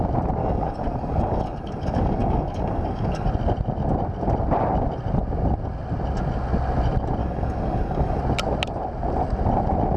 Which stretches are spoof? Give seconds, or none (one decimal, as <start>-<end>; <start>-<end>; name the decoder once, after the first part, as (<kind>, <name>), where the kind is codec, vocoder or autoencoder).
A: 0.4-3.3 (codec, DAC); 7.2-8.2